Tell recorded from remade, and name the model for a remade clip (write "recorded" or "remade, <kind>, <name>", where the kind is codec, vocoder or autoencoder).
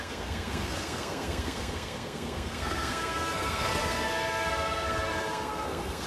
remade, codec, SNAC